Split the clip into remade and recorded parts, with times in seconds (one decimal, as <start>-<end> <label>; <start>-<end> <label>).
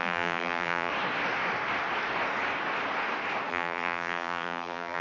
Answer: 0.0-0.9 remade; 0.9-3.5 recorded; 3.5-5.0 remade